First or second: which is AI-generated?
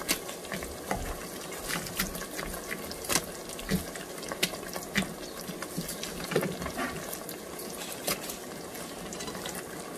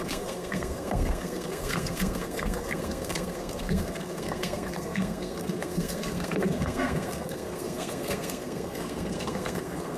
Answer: second